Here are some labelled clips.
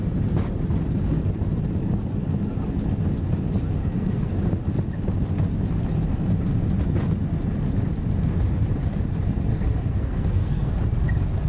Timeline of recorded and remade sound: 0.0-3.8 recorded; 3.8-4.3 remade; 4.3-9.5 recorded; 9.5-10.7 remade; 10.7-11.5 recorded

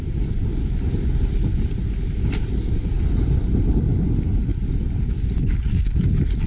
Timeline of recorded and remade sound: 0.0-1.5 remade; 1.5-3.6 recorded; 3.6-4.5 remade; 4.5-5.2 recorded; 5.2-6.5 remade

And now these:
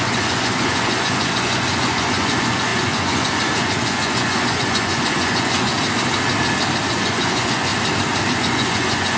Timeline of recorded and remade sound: 0.0-5.7 remade; 5.7-6.9 recorded; 6.9-7.7 remade; 7.7-8.3 recorded; 8.3-9.2 remade